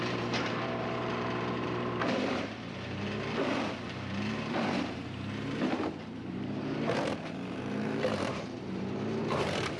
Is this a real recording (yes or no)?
no